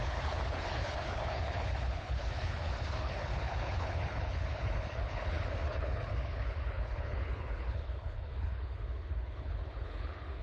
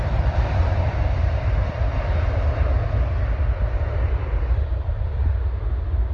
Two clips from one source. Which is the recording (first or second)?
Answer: second